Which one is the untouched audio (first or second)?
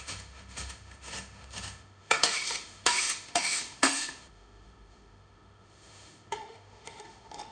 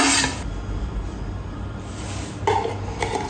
second